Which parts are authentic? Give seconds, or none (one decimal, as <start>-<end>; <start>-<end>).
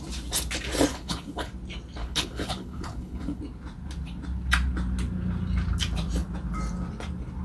0.0-0.9; 1.5-2.0; 3.4-7.4